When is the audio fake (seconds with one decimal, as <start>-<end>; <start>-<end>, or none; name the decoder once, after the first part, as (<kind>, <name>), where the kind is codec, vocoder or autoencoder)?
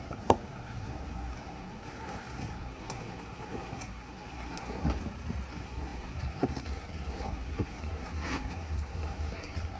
0.0-5.0 (codec, SNAC); 5.5-9.8